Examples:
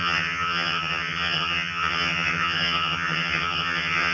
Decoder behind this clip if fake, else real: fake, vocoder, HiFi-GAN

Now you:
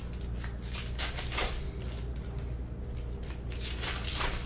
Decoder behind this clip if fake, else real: real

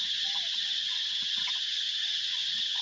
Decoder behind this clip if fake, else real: fake, vocoder, HiFi-GAN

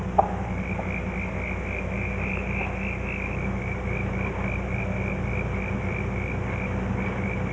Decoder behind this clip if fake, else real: real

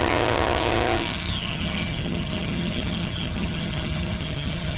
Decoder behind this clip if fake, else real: fake, vocoder, HiFi-GAN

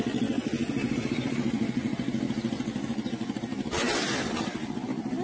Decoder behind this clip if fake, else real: real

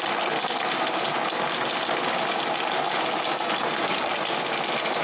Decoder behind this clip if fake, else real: real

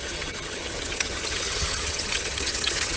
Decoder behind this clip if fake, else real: fake, vocoder, HiFi-GAN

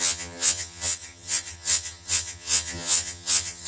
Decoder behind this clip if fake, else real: fake, vocoder, HiFi-GAN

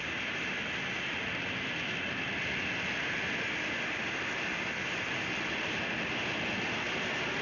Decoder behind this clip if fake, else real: real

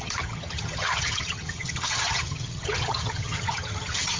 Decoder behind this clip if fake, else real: fake, vocoder, HiFi-GAN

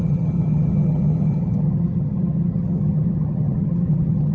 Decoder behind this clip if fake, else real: fake, vocoder, HiFi-GAN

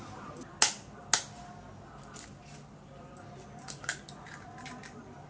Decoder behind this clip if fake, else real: real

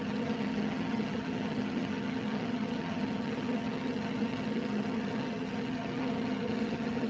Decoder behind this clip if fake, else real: fake, vocoder, HiFi-GAN